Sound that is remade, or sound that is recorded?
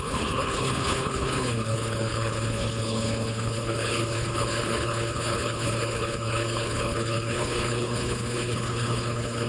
remade